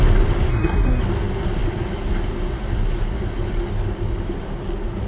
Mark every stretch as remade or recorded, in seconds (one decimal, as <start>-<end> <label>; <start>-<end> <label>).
0.0-0.5 recorded; 0.5-1.0 remade; 1.0-5.1 recorded